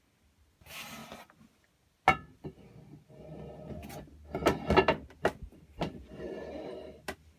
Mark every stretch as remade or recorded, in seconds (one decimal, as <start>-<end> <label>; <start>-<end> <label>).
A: 0.0-7.4 recorded